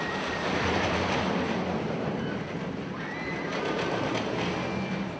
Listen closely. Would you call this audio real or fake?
real